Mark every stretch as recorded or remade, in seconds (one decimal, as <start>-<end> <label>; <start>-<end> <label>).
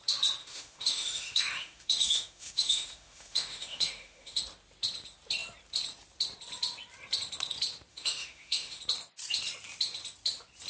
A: 0.0-0.4 recorded; 0.4-4.4 remade; 4.4-7.9 recorded; 7.9-8.8 remade; 8.8-10.7 recorded